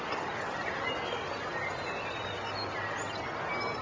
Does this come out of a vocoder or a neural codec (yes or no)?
no